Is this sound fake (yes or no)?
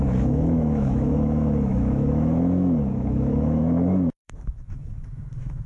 yes